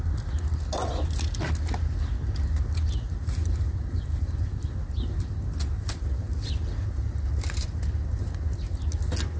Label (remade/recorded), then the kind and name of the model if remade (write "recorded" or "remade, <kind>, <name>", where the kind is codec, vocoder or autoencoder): recorded